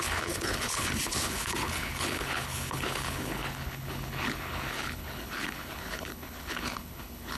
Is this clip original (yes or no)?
no